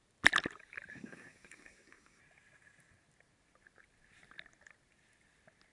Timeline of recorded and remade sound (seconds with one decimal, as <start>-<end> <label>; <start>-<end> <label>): 0.0-0.9 recorded; 0.9-2.2 remade; 2.2-5.7 recorded